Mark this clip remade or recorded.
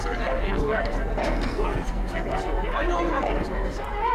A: remade